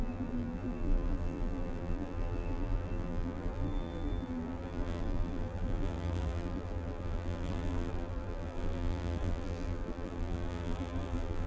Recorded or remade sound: remade